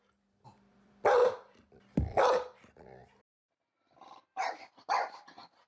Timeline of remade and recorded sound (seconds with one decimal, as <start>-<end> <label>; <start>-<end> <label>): 0.0-5.7 remade

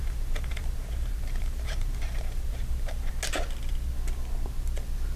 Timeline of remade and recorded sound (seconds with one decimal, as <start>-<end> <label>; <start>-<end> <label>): 0.0-3.1 remade; 3.1-5.2 recorded

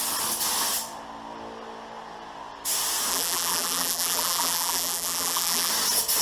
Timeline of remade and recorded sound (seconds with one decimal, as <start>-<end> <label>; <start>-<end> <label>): 0.0-3.1 recorded; 3.1-5.7 remade; 5.7-6.2 recorded

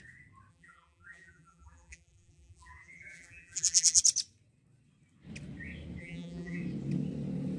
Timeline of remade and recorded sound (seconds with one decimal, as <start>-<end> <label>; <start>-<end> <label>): 0.0-0.5 recorded; 0.5-4.0 remade; 4.0-6.0 recorded; 6.0-6.6 remade; 6.6-7.6 recorded

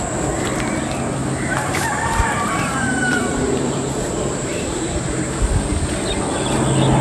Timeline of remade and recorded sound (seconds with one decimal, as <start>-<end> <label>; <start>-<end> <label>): 0.0-1.2 recorded; 1.2-5.4 remade; 5.4-7.0 recorded

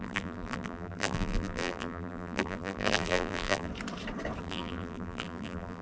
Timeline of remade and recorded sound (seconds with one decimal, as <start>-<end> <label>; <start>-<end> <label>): 0.0-3.7 remade; 3.7-4.4 recorded; 4.4-5.8 remade